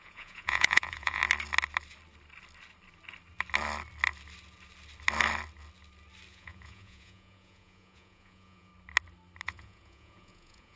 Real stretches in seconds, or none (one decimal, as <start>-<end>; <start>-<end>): 1.2-6.3; 8.7-9.4